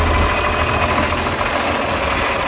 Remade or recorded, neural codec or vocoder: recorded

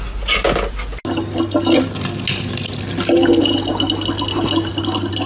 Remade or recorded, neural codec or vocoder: recorded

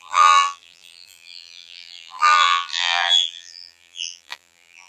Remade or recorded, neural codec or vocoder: remade, vocoder, BigVGAN v2